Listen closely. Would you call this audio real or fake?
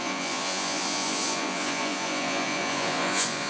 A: fake